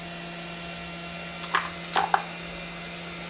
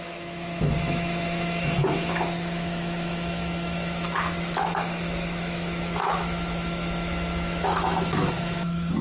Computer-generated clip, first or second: second